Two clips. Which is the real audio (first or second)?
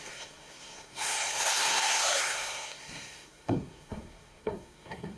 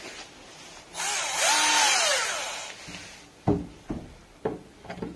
second